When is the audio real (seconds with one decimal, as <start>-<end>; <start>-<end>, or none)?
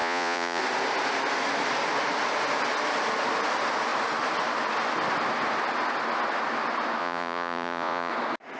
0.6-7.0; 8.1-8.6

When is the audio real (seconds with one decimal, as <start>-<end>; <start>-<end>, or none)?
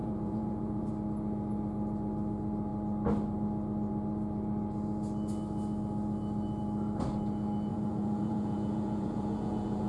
0.9-7.7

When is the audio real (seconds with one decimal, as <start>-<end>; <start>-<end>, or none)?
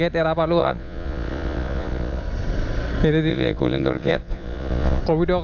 0.0-0.6; 2.2-3.3; 5.0-5.4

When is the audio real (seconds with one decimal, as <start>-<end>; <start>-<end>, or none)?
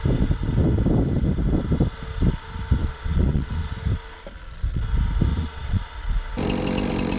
0.0-2.8; 3.7-5.3; 5.8-7.2